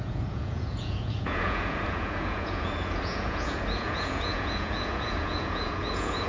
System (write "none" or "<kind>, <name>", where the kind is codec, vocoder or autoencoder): vocoder, Vocos